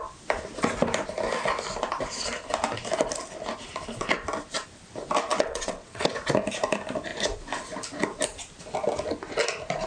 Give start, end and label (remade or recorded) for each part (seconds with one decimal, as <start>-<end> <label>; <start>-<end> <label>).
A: 0.0-5.3 recorded; 5.3-6.1 remade; 6.1-9.9 recorded